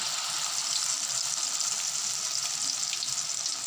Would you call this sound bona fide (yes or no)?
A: yes